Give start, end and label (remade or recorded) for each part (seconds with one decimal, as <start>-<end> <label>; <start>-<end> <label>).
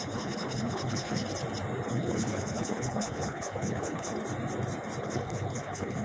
0.0-1.2 remade; 1.2-1.9 recorded; 1.9-4.1 remade; 4.1-5.0 recorded; 5.0-6.0 remade